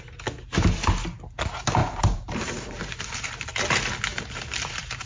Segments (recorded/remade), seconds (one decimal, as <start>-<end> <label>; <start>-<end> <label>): 0.0-1.8 recorded; 1.8-3.5 remade; 3.5-4.1 recorded; 4.1-5.1 remade